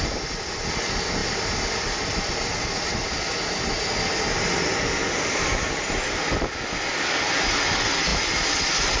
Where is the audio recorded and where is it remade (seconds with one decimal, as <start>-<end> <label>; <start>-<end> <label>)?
0.0-9.0 recorded